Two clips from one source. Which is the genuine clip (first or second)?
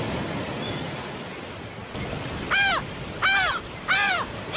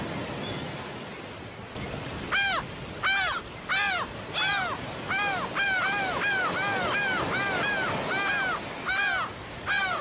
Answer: second